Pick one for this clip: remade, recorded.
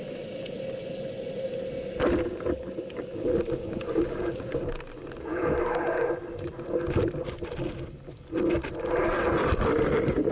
recorded